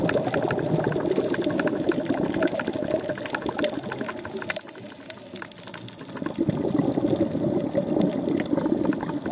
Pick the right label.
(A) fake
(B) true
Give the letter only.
B